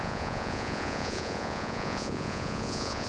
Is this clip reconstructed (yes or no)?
yes